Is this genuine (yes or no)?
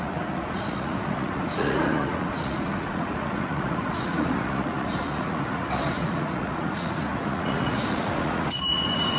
no